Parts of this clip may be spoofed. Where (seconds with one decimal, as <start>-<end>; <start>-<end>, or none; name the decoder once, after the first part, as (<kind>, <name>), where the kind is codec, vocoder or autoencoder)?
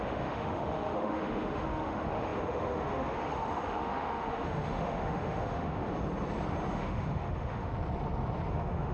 0.0-5.9 (autoencoder, DAC-VAE); 6.7-7.7; 8.5-8.9